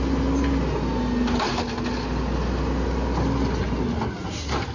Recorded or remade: recorded